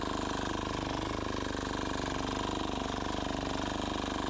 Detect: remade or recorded recorded